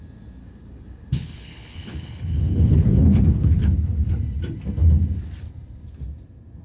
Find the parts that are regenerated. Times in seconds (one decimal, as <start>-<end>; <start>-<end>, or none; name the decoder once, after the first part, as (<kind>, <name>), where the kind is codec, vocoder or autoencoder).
0.4-4.2 (codec, HILCodec)